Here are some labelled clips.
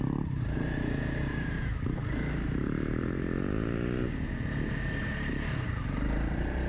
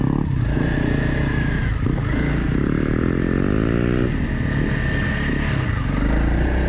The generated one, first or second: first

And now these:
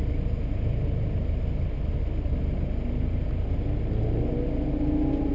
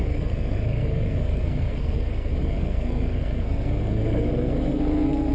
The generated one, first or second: second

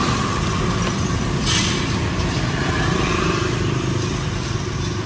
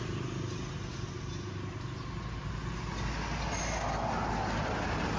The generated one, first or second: first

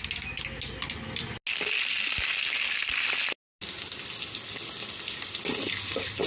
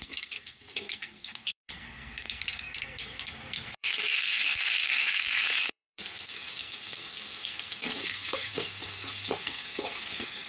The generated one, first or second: second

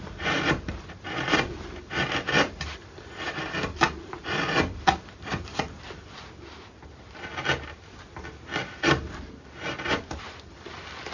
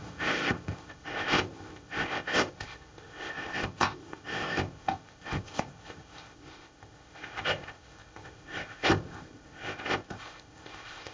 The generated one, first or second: second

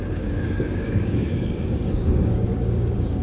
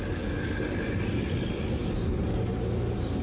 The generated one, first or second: first